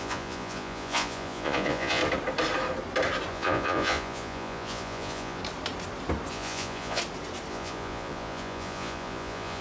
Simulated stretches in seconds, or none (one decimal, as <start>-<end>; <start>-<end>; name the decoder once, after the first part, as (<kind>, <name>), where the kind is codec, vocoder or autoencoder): 0.0-2.0 (vocoder, Vocos); 3.3-5.4; 6.3-7.0; 7.5-9.6